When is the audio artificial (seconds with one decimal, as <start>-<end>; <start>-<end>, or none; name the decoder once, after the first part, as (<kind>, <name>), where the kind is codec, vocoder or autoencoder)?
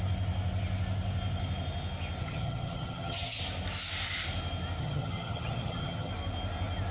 2.2-3.4 (vocoder, HiFi-GAN); 4.8-6.1